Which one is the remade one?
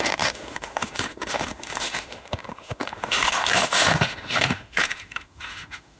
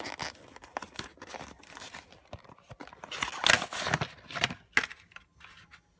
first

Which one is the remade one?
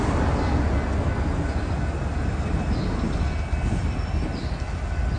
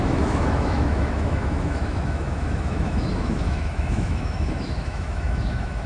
second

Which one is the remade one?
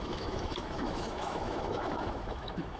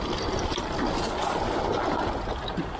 first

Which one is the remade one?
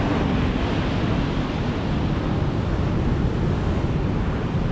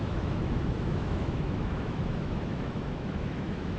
second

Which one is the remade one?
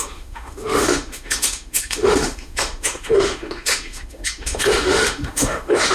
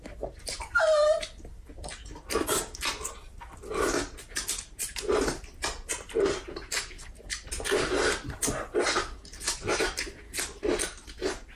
first